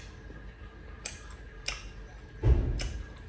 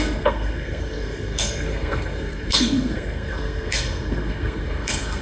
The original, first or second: first